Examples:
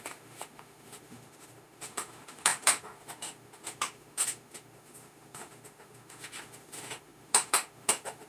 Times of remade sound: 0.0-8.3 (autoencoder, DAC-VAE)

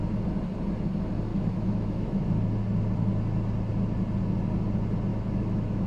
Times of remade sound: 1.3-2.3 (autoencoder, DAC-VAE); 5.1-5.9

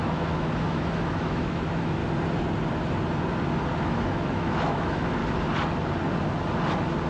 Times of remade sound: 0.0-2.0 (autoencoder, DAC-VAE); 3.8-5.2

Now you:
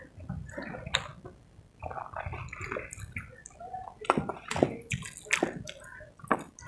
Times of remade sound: none

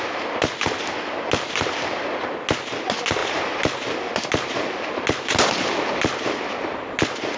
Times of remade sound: none

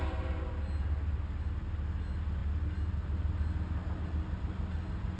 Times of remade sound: none

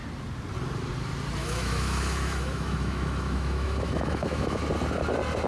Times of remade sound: 1.4-4.6 (autoencoder, DAC-VAE)

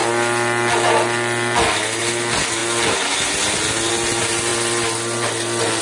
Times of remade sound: none